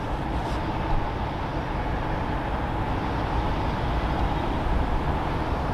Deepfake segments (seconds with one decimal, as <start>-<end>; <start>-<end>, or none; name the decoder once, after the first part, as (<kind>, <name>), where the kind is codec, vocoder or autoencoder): none